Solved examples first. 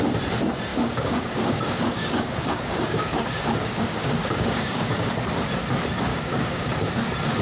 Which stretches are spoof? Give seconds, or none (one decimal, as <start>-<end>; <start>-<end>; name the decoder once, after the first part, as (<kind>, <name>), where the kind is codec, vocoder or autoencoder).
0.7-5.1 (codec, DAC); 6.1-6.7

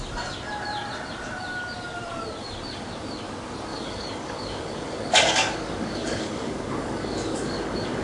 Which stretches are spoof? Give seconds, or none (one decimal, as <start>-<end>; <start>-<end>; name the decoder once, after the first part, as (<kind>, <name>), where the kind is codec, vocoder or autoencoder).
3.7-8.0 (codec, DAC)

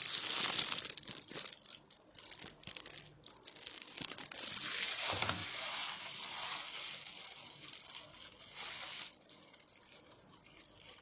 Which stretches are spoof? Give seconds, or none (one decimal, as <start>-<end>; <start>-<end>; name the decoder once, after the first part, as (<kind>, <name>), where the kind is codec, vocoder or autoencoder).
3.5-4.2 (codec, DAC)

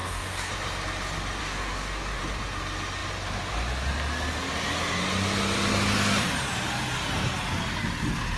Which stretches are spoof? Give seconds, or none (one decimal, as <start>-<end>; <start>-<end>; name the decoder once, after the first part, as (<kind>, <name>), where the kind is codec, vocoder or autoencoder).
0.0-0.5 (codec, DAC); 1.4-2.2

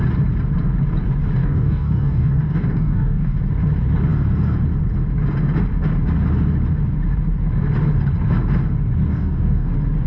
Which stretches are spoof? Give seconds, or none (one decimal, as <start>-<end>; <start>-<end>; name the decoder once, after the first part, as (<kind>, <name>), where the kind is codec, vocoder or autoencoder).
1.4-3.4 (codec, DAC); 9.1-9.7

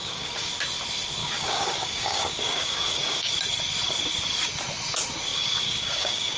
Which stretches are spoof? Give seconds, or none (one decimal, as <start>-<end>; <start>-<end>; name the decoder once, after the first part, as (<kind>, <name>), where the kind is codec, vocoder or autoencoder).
0.0-0.5 (codec, DAC); 1.2-3.3; 5.3-6.4

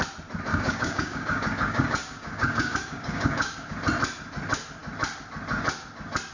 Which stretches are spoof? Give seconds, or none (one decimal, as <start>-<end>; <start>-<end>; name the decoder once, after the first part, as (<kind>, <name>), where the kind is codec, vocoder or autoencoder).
0.5-3.7 (codec, DAC)